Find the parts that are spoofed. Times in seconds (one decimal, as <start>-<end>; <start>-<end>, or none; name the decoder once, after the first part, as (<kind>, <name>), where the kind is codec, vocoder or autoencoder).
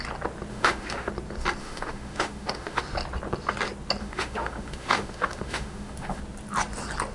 0.5-1.1 (autoencoder, DAC-VAE); 1.6-2.8; 4.0-6.2